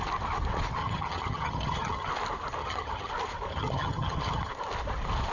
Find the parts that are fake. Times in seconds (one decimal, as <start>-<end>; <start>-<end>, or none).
0.8-2.1; 2.6-3.1; 3.5-4.5